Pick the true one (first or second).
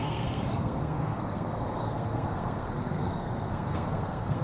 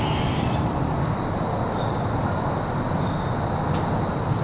second